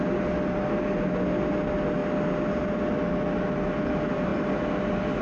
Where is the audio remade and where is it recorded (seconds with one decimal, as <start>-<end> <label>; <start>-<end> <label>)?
0.0-5.2 recorded